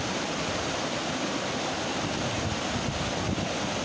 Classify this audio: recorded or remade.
recorded